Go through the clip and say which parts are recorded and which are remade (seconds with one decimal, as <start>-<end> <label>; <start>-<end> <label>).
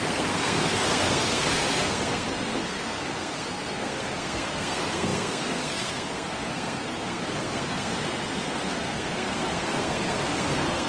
0.0-10.9 remade